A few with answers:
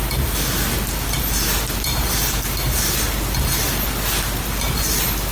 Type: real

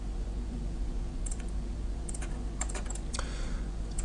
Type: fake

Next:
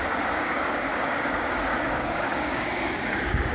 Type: fake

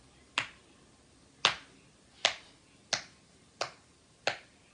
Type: real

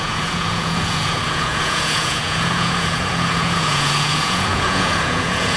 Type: fake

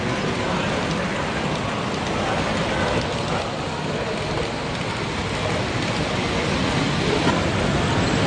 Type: real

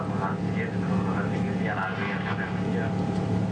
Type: real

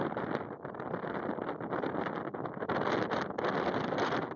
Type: real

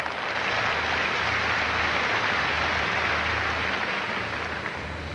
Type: real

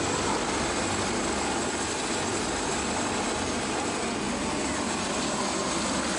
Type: real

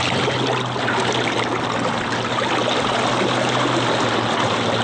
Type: real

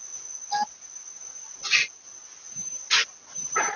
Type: real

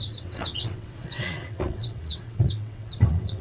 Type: fake